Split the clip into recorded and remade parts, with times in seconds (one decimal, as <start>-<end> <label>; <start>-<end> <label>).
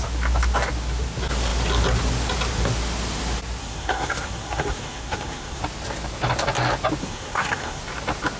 0.0-3.6 recorded; 3.6-5.6 remade; 5.6-7.0 recorded; 7.0-7.8 remade; 7.8-8.4 recorded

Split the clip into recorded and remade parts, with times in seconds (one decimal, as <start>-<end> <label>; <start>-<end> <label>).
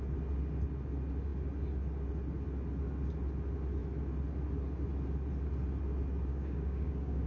0.0-6.3 recorded; 6.3-7.3 remade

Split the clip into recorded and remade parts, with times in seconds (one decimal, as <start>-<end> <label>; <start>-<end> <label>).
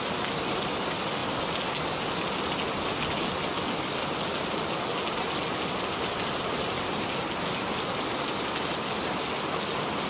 0.0-10.1 recorded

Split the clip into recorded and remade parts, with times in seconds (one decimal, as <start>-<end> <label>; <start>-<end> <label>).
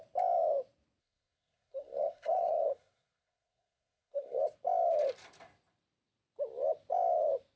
0.0-1.0 recorded; 1.0-4.4 remade; 4.4-7.6 recorded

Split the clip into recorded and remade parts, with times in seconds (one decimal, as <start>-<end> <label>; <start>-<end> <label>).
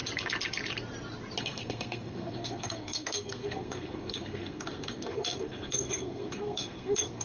0.0-1.4 recorded; 1.4-7.2 remade